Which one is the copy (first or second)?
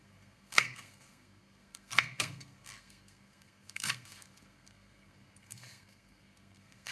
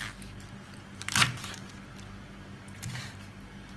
first